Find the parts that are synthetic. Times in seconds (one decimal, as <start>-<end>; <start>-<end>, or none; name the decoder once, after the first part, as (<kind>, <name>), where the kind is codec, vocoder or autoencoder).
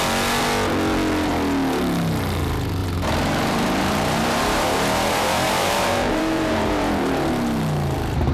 2.8-7.3 (vocoder, BigVGAN v2)